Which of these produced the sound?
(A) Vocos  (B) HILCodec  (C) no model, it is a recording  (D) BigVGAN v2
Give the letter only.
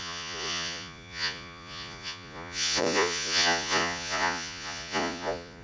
A